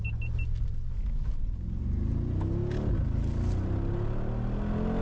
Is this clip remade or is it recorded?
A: recorded